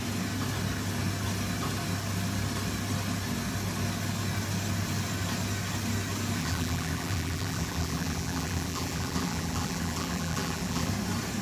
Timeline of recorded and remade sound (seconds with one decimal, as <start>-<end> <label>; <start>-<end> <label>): 0.0-6.4 recorded; 6.4-10.9 remade; 10.9-11.4 recorded